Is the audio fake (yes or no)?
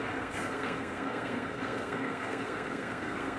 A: yes